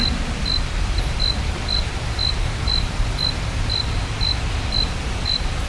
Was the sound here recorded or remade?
recorded